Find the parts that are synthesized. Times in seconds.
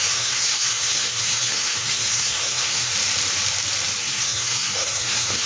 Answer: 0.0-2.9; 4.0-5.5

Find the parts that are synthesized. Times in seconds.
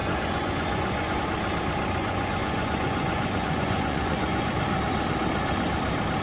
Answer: 0.0-1.2; 2.0-4.5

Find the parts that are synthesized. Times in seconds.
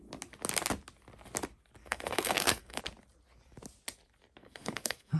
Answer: 1.8-2.8; 4.4-5.2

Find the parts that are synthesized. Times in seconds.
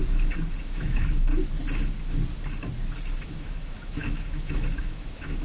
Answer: 0.6-1.3; 3.2-5.4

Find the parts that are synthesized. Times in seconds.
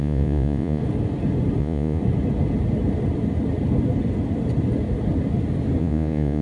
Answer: 0.0-0.8; 1.6-2.0; 5.8-6.4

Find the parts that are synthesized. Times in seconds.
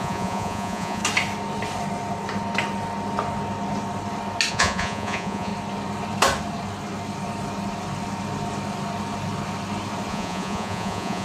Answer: 0.0-1.0; 4.5-5.5; 10.1-11.2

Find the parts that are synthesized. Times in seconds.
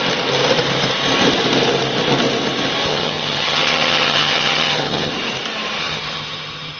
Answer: 2.9-5.1; 5.8-6.8